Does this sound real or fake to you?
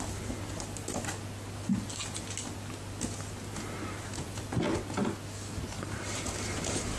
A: real